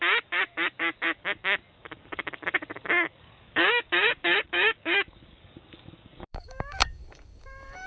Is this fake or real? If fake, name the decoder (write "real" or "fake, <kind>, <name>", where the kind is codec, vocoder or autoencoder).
fake, codec, DAC